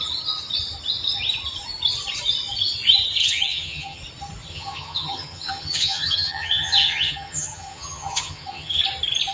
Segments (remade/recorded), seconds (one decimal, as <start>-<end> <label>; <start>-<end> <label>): 0.0-3.2 recorded; 3.2-4.0 remade; 4.0-4.5 recorded; 4.5-8.8 remade; 8.8-9.3 recorded